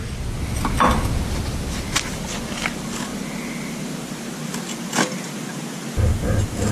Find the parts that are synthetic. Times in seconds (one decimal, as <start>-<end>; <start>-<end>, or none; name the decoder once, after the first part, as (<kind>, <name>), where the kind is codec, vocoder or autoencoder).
none